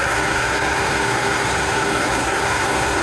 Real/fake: fake